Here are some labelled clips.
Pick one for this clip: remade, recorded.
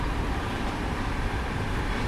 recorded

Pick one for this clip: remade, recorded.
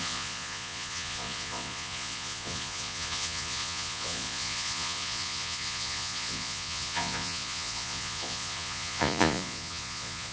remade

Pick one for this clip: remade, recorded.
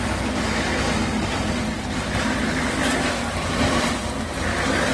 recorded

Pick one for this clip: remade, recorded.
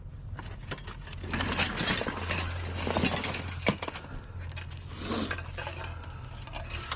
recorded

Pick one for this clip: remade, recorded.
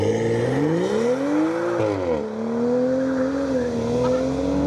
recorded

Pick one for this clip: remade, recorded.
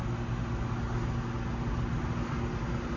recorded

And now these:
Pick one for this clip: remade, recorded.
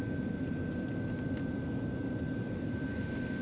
recorded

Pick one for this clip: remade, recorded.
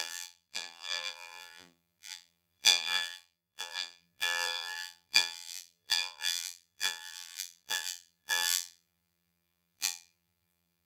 remade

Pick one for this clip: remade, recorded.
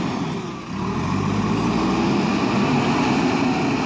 recorded